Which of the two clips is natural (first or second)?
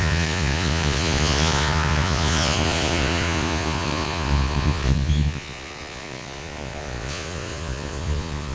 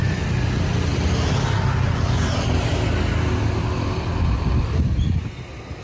second